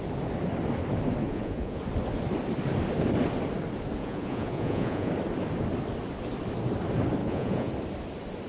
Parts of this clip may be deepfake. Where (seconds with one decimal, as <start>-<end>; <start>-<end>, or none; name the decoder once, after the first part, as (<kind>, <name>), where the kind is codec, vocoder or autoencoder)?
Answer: 1.2-1.8 (vocoder, Vocos); 4.0-5.1; 7.2-7.7